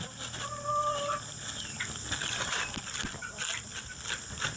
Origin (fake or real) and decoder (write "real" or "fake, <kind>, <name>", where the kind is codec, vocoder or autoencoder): real